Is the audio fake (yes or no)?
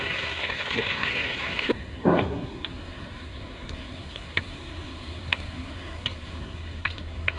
yes